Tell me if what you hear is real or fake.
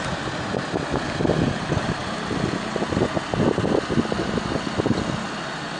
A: real